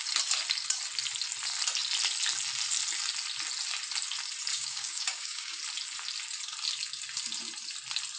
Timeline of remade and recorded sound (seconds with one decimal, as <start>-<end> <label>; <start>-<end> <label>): 0.0-4.5 recorded; 4.5-5.6 remade; 5.6-8.2 recorded